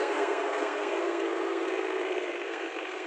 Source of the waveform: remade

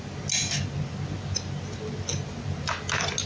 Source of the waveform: recorded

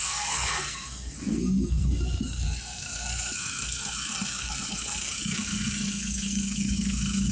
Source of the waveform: remade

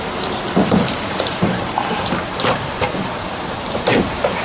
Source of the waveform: remade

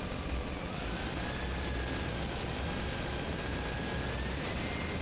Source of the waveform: recorded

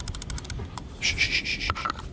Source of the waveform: recorded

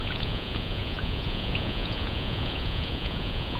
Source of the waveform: remade